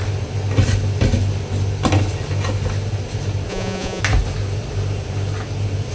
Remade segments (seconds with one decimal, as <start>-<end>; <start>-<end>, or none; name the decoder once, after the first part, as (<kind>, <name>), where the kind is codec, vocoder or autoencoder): 3.5-4.0 (vocoder, Vocos)